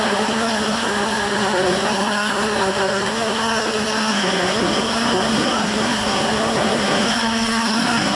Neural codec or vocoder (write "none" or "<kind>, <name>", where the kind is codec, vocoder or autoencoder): codec, SNAC